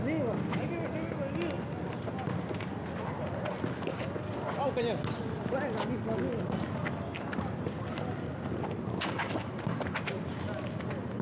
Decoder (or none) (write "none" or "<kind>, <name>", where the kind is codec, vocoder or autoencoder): none